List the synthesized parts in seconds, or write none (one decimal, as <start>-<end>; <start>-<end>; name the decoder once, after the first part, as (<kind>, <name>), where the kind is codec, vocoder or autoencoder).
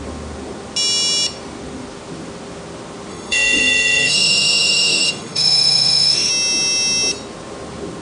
3.1-6.3 (autoencoder, DAC-VAE)